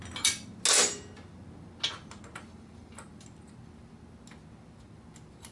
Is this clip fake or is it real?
real